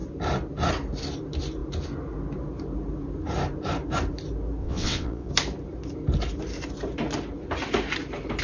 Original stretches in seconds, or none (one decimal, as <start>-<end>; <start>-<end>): 0.0-4.6; 5.3-8.4